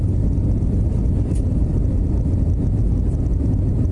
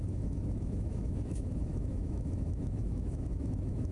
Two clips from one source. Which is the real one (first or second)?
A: first